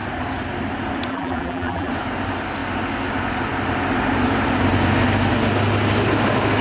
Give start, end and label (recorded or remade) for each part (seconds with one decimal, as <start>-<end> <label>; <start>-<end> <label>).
0.0-1.1 recorded; 1.1-1.9 remade; 1.9-6.6 recorded